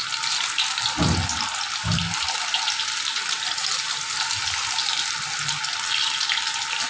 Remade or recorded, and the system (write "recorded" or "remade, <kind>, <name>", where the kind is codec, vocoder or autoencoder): recorded